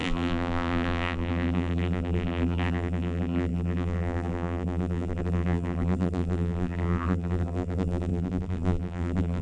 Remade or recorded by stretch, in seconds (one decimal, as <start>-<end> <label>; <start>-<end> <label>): 0.0-9.4 remade